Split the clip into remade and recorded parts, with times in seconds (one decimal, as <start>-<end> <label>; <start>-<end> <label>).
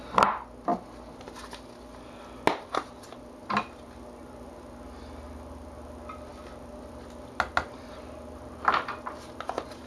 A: 0.0-9.9 recorded